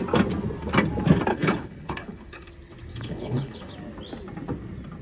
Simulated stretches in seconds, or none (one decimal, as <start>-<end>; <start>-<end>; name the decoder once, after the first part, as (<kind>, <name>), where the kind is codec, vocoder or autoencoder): 1.3-2.5 (codec, HILCodec); 2.9-3.7